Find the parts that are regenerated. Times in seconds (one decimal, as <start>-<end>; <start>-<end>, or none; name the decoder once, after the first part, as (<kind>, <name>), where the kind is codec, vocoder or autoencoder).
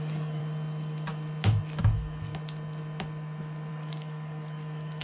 0.0-0.4 (codec, DAC); 1.8-2.3; 3.7-5.0